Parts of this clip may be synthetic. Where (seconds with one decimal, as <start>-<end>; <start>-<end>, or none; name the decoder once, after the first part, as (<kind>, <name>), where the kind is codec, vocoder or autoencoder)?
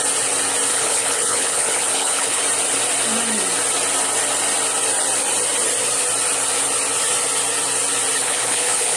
0.7-2.4 (codec, HILCodec); 8.2-9.0